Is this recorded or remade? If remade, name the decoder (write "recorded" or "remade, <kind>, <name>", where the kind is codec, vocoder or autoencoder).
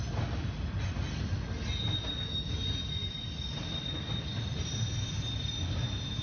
recorded